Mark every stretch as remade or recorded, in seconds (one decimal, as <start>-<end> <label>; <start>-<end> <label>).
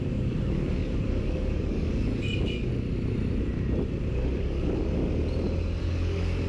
0.0-2.7 remade; 2.7-4.1 recorded; 4.1-5.0 remade; 5.0-5.8 recorded; 5.8-6.5 remade